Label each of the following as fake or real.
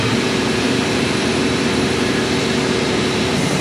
fake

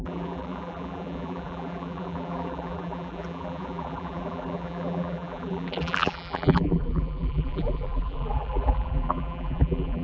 fake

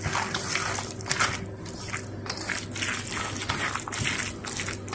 real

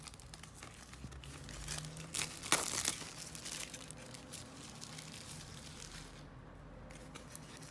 real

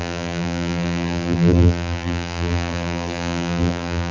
fake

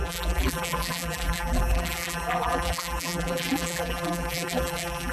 fake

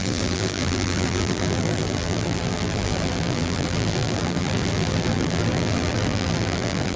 fake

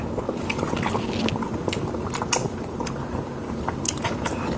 real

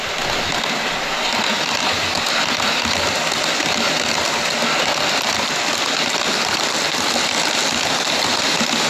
real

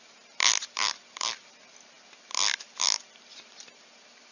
real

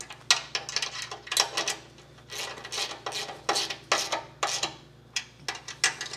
real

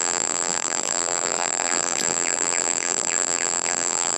fake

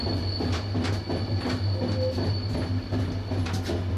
real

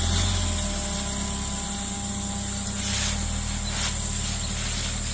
real